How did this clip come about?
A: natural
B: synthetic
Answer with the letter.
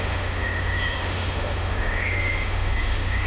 B